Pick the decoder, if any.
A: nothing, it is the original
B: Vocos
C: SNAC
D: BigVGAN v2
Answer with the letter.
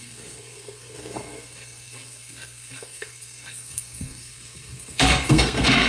C